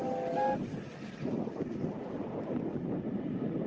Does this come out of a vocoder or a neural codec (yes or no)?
no